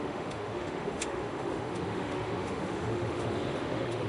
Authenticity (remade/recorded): remade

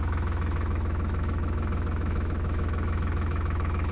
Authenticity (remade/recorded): remade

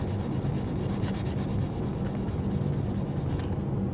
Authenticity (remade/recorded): recorded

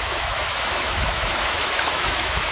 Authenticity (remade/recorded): remade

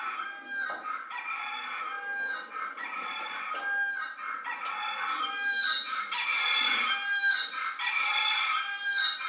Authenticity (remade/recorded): recorded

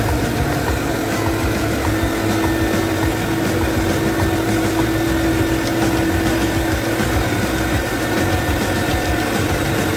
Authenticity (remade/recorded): recorded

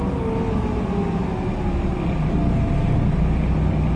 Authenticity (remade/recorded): recorded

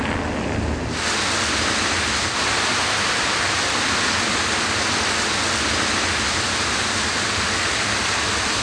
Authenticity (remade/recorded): recorded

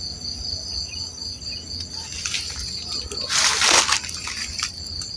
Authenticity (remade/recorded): recorded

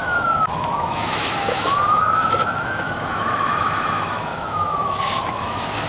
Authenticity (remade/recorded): remade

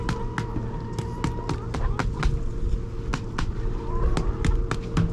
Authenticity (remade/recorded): recorded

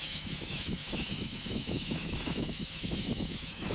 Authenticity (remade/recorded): remade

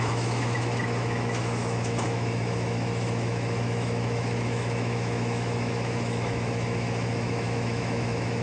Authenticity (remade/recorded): remade